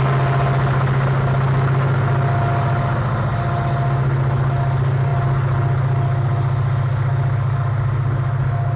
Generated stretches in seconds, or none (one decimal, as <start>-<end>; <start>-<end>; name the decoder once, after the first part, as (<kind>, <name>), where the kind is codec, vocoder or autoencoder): none